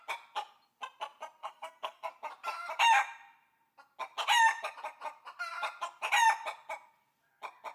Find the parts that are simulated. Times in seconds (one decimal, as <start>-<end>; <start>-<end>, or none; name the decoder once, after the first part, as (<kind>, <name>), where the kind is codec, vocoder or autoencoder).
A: 1.4-2.1 (codec, SNAC)